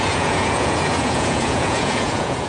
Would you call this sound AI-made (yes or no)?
yes